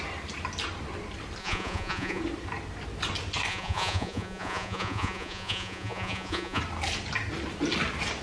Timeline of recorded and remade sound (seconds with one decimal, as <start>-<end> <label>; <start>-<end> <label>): 0.0-1.4 recorded; 1.4-2.2 remade; 2.2-3.5 recorded; 3.5-6.6 remade; 6.6-8.2 recorded